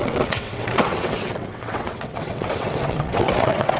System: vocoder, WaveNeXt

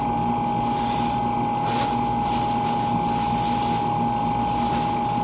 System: none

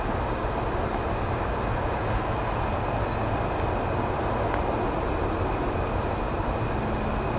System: none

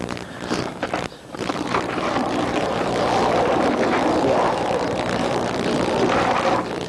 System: none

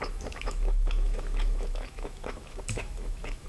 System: autoencoder, DAC-VAE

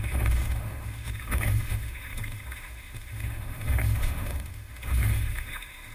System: autoencoder, DAC-VAE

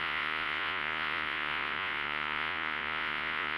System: vocoder, Vocos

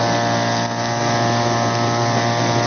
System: none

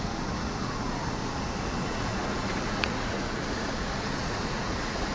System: vocoder, Vocos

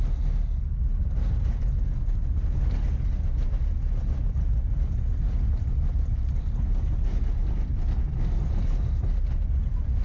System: none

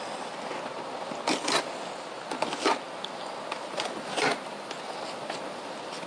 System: none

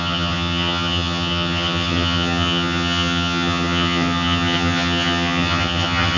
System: vocoder, HiFi-GAN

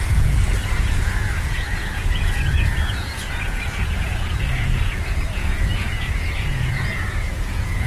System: vocoder, Vocos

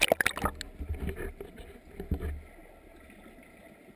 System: none